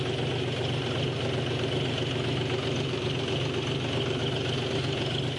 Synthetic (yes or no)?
no